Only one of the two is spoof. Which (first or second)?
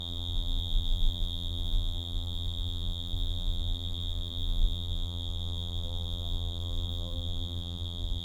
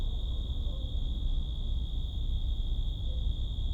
first